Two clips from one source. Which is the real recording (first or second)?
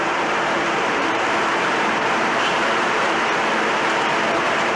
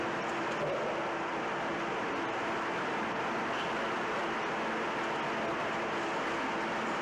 second